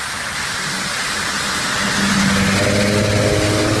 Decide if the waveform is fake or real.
real